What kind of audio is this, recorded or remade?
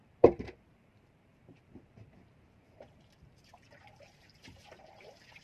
remade